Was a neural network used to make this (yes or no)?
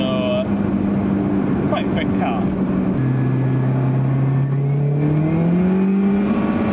no